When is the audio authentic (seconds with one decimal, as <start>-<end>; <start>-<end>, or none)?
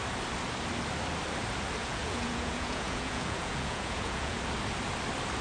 0.0-1.8; 4.4-5.4